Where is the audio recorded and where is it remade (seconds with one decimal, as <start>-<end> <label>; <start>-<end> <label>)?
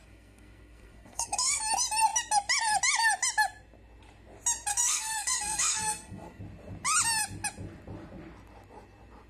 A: 0.0-1.6 remade; 1.6-4.7 recorded; 4.7-6.4 remade; 6.4-9.3 recorded